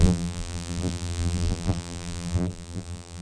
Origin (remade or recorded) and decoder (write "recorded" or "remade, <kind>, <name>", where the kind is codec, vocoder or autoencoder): remade, vocoder, BigVGAN v2